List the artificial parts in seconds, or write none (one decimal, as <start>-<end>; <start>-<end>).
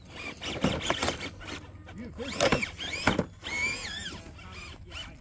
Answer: none